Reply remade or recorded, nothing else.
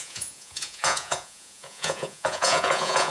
remade